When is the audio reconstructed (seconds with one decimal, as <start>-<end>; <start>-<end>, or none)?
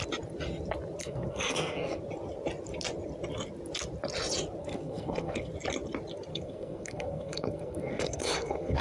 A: 1.0-2.0; 4.6-5.5; 6.3-8.8